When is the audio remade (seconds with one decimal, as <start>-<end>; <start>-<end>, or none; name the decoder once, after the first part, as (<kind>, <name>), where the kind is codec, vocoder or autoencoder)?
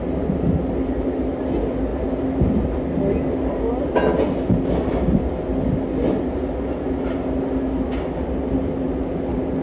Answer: none